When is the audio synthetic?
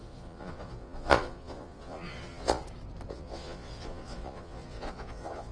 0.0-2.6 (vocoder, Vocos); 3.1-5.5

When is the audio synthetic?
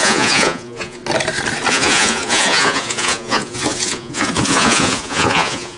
0.0-1.0 (vocoder, Vocos); 1.7-5.8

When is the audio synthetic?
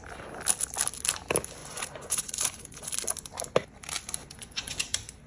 1.6-2.9 (vocoder, Vocos); 4.2-4.8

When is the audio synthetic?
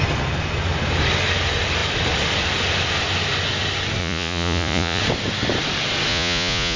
4.0-5.0 (vocoder, Vocos); 6.1-6.8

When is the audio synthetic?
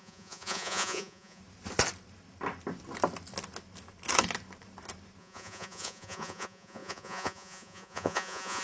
0.0-1.4 (vocoder, Vocos); 5.2-8.6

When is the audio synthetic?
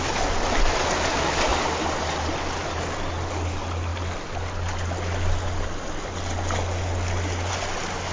none